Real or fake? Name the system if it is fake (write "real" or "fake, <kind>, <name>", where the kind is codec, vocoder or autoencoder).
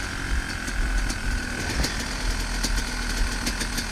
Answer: real